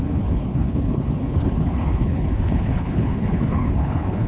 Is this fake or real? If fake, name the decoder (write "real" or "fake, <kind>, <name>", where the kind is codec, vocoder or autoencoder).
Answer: fake, codec, HILCodec